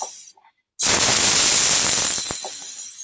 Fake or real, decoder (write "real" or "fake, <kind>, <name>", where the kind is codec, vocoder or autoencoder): real